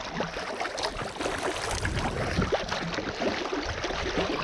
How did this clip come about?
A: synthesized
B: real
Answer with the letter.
B